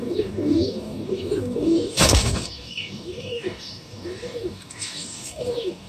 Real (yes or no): no